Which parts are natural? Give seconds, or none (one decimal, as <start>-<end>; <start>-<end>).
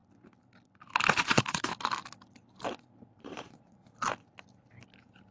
0.0-1.1; 1.7-3.2; 3.8-5.3